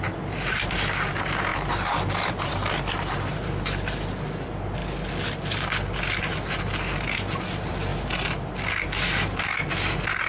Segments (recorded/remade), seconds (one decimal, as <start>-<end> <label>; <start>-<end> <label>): 0.0-10.3 recorded